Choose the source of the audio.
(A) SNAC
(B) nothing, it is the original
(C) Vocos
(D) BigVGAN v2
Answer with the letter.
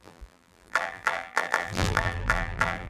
D